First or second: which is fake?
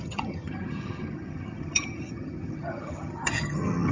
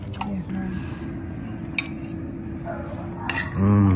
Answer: first